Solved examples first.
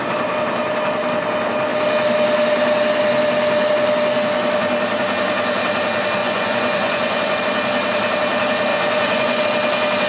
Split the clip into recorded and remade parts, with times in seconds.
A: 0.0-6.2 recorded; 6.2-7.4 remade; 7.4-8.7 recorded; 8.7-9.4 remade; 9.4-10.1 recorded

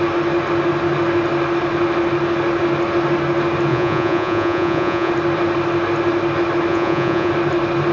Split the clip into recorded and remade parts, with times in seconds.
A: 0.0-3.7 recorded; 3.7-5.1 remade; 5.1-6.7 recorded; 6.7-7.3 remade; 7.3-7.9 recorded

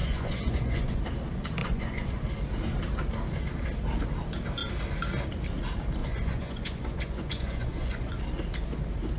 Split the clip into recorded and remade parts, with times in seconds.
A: 0.0-1.0 remade; 1.0-1.6 recorded; 1.6-2.1 remade; 2.1-6.0 recorded; 6.0-8.0 remade; 8.0-9.2 recorded

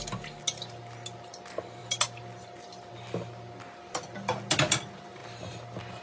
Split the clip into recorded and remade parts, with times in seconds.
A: 0.0-6.0 recorded

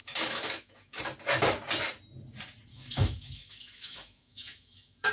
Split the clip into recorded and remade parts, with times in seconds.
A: 0.0-1.0 remade; 1.0-2.7 recorded; 2.7-5.1 remade

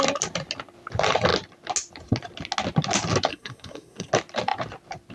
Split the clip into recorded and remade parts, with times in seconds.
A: 0.0-3.3 recorded; 3.3-4.1 remade; 4.1-5.1 recorded